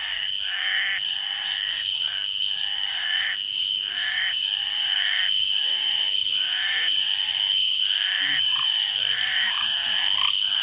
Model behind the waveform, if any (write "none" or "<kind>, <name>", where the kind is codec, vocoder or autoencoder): codec, DAC